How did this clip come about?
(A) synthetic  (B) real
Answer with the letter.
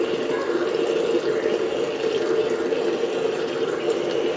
B